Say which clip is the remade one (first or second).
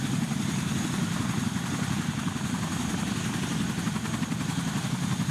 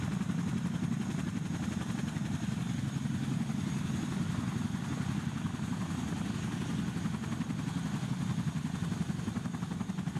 first